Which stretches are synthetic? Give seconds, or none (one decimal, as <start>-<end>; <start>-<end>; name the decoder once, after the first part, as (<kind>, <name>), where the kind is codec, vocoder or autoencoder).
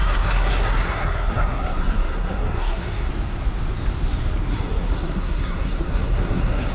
0.0-3.1 (codec, SNAC); 4.5-6.7